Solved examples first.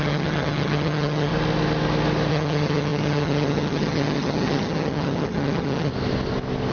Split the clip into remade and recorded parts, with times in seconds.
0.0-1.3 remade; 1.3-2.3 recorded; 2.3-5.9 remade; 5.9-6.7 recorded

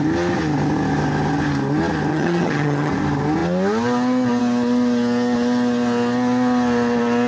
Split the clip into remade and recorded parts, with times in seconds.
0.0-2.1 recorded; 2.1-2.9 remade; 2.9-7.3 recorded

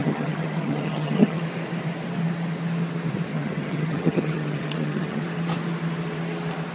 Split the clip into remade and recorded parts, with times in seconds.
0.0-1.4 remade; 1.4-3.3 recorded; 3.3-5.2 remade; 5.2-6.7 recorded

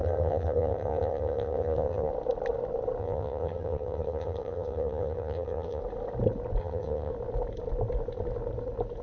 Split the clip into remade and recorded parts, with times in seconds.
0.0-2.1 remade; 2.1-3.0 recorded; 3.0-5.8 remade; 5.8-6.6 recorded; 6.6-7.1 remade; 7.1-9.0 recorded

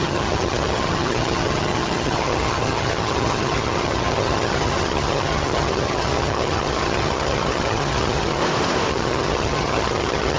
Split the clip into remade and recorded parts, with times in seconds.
0.0-8.4 remade; 8.4-8.9 recorded; 8.9-10.4 remade

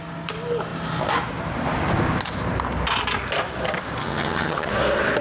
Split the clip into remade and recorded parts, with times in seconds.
0.0-4.0 recorded; 4.0-4.7 remade; 4.7-5.2 recorded